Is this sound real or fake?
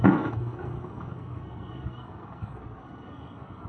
fake